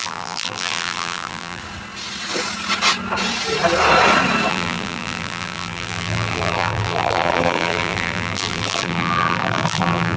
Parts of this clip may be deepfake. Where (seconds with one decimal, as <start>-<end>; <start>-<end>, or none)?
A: 0.0-1.6; 4.5-10.2